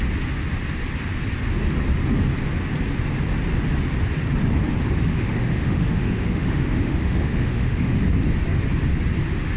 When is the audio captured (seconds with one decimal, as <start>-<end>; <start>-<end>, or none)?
0.0-5.1; 8.0-9.6